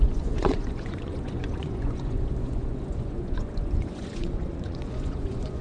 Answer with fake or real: fake